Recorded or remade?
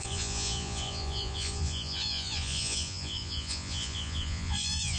remade